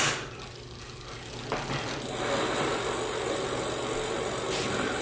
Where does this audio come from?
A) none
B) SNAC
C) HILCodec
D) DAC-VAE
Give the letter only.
A